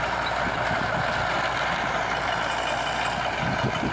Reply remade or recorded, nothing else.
recorded